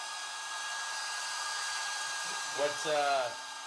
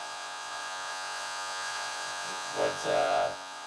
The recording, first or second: first